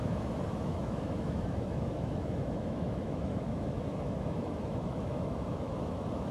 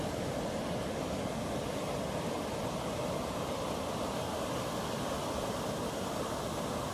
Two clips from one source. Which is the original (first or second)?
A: second